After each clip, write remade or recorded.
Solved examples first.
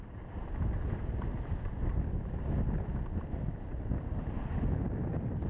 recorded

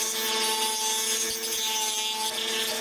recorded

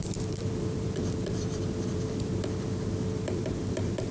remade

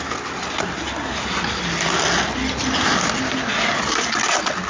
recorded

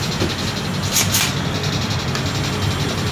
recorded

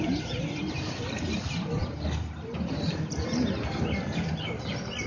remade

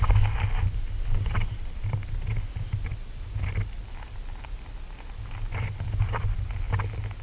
recorded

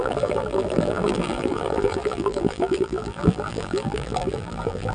remade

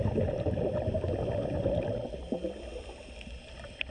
recorded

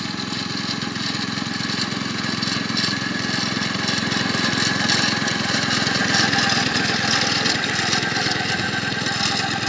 recorded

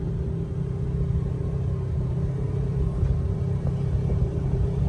recorded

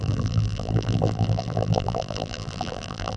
remade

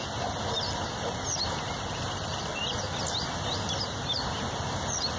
recorded